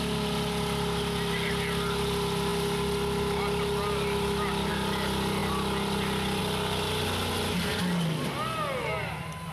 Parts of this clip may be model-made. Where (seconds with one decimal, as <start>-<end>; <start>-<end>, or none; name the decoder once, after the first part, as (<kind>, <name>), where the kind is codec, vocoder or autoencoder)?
none